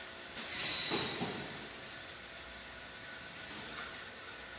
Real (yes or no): yes